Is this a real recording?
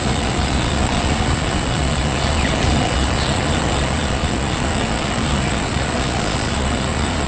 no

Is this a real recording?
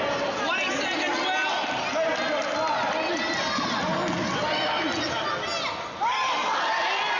yes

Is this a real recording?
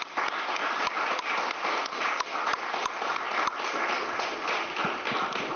yes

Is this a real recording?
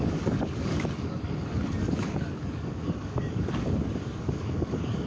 no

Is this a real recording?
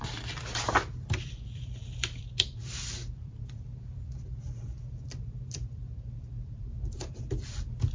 no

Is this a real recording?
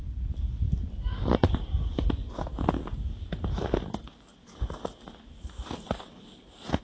yes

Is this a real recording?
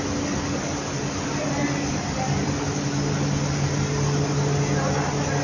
yes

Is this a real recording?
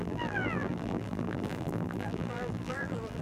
no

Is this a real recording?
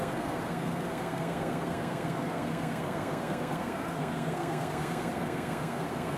no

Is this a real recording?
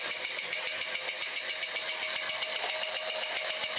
yes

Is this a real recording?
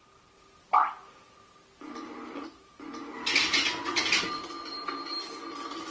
yes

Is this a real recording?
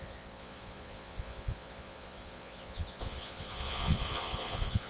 no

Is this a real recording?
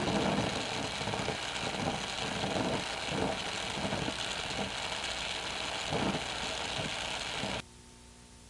yes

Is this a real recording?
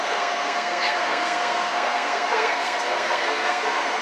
no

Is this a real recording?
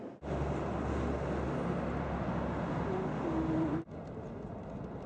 yes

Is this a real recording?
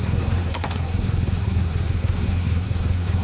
no